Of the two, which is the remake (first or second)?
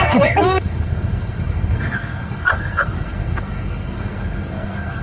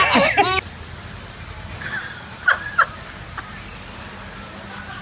first